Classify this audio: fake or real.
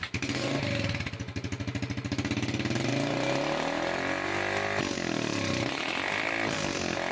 real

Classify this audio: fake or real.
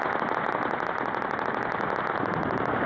real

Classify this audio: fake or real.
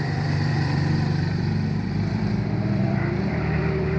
fake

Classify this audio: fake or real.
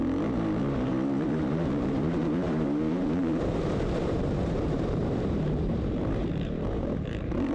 fake